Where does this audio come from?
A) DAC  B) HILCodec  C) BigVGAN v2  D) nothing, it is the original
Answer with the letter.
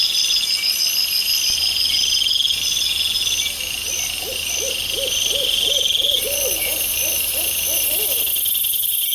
D